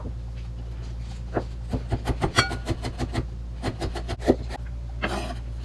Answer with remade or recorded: recorded